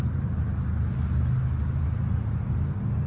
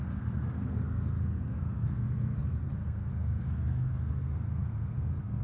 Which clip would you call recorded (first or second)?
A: first